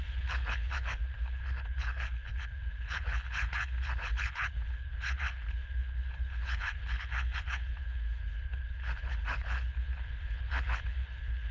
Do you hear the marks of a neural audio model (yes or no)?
yes